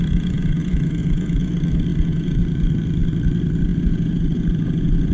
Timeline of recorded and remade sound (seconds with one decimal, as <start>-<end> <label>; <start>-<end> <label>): 0.0-1.5 remade; 1.5-2.0 recorded; 2.0-2.4 remade; 2.4-3.8 recorded; 3.8-5.1 remade